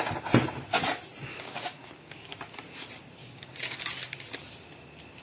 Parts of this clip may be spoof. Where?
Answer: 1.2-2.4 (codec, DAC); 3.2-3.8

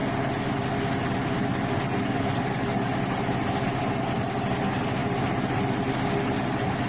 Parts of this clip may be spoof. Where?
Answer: none

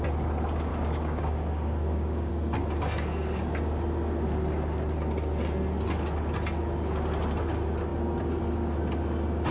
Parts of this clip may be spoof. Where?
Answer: 0.7-2.3 (codec, DAC)

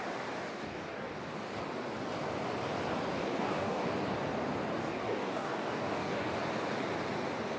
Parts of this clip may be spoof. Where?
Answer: 0.5-1.2 (codec, DAC); 3.1-3.9; 4.8-6.3

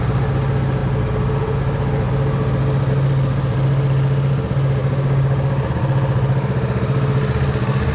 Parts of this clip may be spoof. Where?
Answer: 4.8-5.7 (codec, DAC)